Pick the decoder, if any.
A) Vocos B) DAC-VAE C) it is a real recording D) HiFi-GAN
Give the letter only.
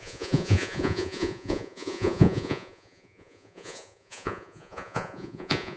A